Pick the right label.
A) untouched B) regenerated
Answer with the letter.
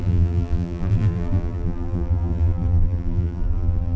B